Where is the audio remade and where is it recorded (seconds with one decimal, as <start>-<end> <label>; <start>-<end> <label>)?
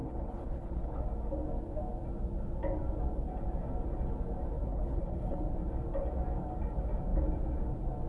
0.0-1.0 remade; 1.0-4.7 recorded; 4.7-5.4 remade; 5.4-8.1 recorded